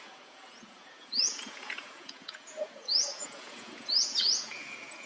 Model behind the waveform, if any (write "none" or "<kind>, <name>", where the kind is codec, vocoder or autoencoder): vocoder, Vocos